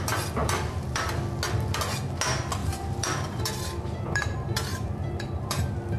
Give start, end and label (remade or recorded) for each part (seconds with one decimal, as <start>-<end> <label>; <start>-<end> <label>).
0.0-0.4 recorded; 0.4-1.1 remade; 1.1-2.6 recorded; 2.6-5.6 remade; 5.6-6.0 recorded